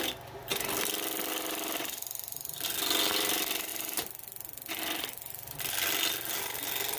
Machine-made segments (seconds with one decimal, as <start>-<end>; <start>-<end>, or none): none